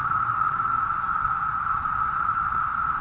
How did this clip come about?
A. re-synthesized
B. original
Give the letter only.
A